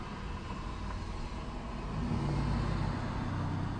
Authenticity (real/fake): real